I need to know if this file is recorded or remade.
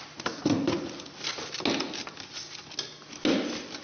recorded